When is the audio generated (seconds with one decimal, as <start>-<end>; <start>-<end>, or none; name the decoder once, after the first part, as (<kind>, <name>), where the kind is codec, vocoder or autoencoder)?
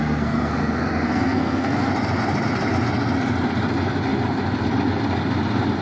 0.0-1.9 (codec, SNAC)